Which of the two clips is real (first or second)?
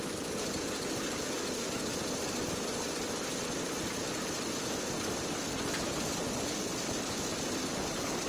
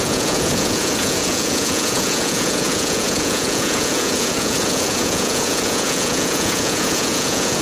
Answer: first